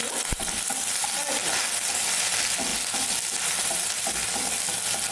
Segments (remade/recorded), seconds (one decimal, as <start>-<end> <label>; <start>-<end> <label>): 0.0-5.1 recorded